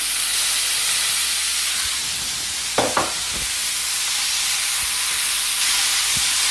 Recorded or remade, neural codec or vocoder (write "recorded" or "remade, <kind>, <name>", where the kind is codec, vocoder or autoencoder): recorded